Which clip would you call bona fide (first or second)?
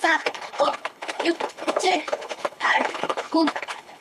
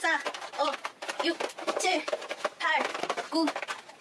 second